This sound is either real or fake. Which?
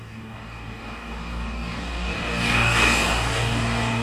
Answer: fake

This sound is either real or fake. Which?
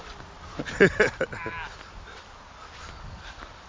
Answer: real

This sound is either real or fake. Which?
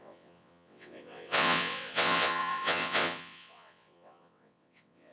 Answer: fake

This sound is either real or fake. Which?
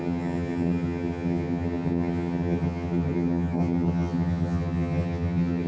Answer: fake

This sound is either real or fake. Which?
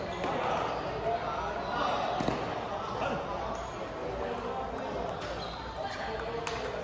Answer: real